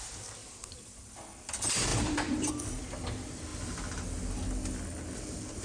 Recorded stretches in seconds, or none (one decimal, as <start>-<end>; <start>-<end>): 0.0-0.4; 1.0-1.9; 2.5-5.6